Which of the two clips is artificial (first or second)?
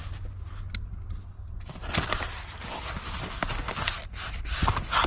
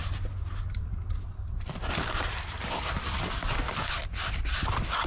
second